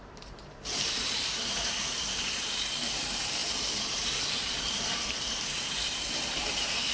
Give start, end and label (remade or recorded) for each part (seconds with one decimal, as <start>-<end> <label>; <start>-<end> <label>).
0.0-6.9 remade